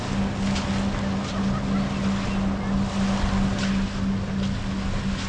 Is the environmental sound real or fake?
real